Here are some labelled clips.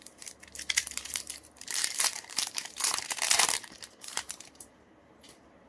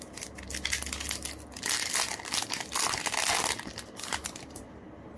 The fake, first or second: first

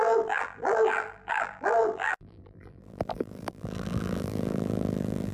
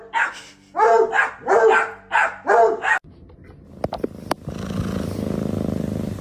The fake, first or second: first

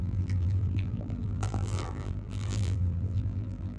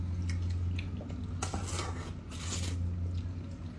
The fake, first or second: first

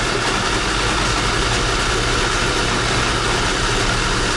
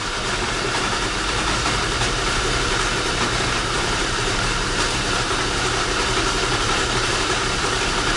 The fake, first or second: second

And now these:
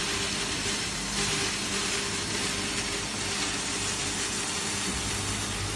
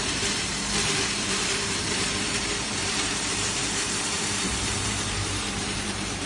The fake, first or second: second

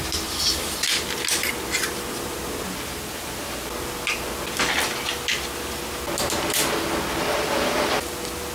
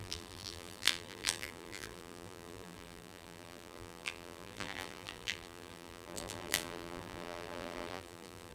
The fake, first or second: second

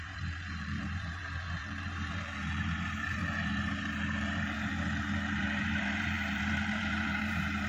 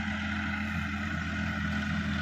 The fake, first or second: first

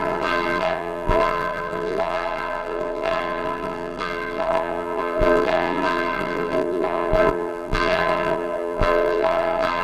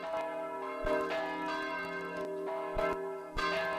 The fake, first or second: first